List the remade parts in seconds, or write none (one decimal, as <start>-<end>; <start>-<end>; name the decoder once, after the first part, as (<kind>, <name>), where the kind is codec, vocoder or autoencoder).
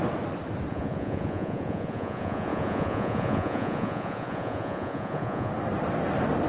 0.7-5.5 (vocoder, Vocos)